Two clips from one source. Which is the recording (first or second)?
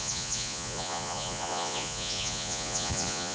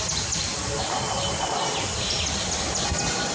second